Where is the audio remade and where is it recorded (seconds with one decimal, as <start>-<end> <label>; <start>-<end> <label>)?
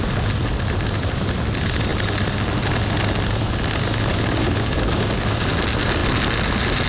0.0-4.1 recorded; 4.1-5.5 remade; 5.5-6.9 recorded